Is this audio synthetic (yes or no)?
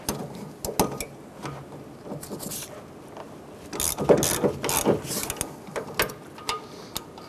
no